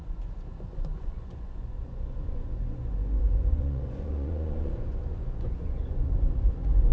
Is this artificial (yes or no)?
yes